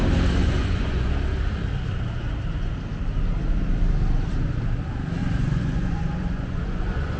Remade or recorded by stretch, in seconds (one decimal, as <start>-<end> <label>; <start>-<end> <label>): 0.0-0.4 recorded; 0.4-1.1 remade; 1.1-5.2 recorded; 5.2-7.2 remade